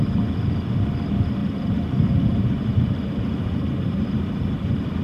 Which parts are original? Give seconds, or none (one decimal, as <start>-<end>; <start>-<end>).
0.0-1.4; 4.4-5.0